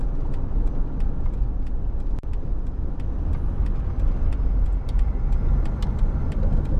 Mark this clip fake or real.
real